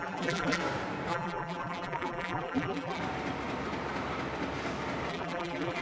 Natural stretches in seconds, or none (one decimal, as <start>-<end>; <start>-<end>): 0.6-1.1; 3.0-5.1